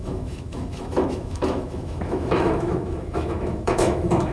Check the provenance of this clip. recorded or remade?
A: remade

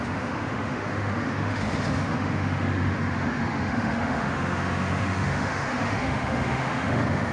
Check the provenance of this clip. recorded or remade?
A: remade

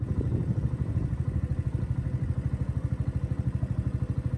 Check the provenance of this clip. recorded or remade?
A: recorded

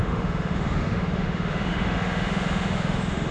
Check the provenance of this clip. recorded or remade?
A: remade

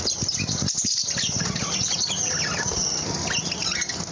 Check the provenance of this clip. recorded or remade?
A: recorded